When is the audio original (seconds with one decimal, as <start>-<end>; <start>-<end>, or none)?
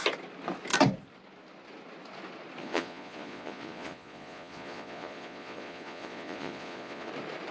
0.0-2.6; 7.1-7.5